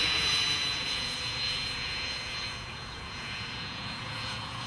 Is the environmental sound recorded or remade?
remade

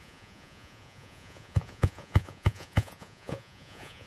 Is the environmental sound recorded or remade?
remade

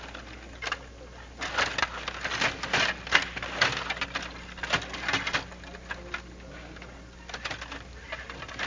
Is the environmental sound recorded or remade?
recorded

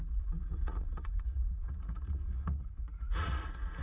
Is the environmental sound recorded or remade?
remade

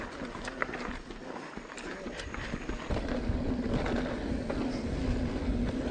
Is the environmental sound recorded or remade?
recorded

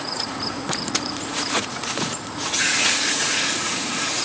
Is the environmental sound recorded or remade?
remade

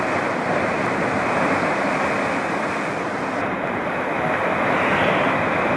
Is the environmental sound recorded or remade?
recorded